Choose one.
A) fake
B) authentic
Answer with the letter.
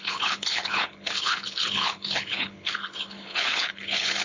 A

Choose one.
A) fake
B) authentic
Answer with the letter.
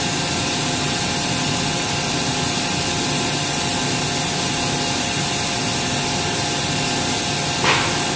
B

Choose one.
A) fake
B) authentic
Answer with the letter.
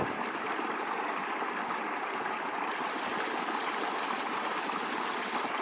B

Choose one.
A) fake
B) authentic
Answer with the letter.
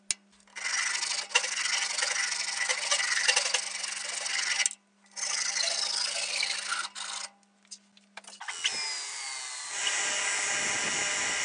B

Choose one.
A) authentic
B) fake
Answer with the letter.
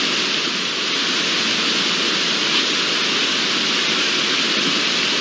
A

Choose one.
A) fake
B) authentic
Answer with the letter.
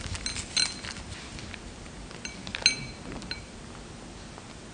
B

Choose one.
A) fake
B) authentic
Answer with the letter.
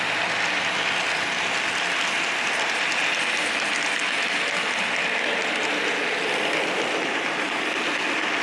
B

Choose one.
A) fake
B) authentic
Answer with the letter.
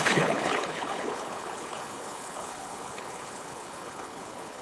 A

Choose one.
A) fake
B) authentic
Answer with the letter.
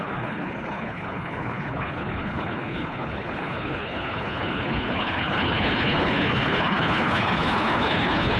A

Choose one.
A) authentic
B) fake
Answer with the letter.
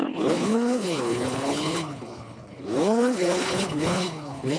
B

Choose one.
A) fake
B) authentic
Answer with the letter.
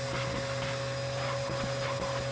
B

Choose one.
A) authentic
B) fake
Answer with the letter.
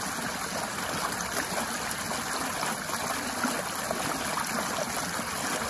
A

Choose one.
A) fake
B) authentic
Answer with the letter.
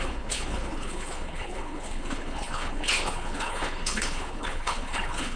A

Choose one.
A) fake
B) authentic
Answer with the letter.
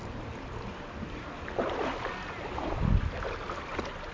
B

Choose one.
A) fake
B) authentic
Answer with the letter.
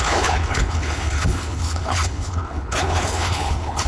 A